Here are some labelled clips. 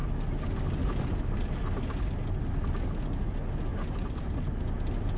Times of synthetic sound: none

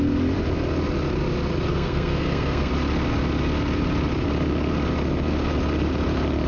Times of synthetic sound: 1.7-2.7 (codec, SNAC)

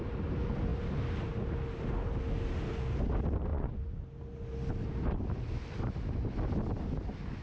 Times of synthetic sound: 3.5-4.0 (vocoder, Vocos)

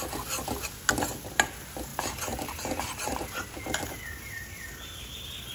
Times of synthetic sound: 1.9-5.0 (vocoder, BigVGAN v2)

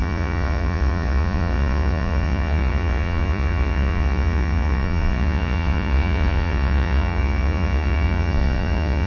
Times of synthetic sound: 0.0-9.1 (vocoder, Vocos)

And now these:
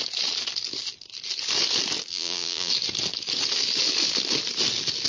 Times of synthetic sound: 2.1-2.7 (vocoder, BigVGAN v2)

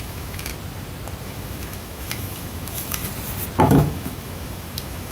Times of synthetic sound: 0.0-0.5 (autoencoder, DAC-VAE); 1.2-3.0; 3.6-5.1